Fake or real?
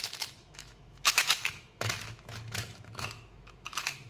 fake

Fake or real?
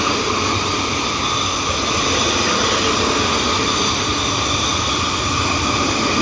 real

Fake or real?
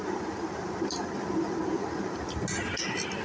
real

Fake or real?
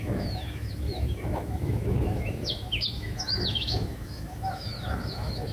fake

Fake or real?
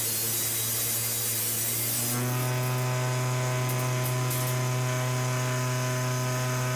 real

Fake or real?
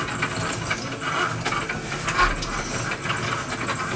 real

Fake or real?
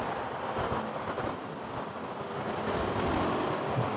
real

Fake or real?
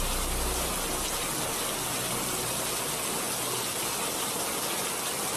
real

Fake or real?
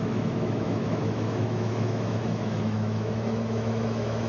fake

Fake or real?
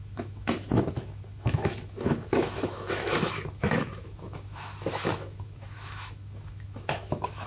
fake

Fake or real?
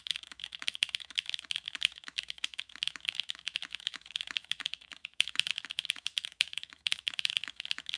fake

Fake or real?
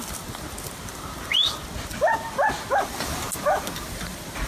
real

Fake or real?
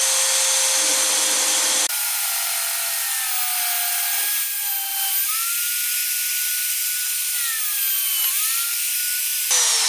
real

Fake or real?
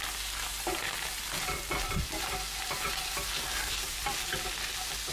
real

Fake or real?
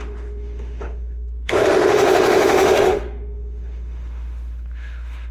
fake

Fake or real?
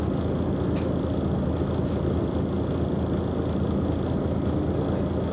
real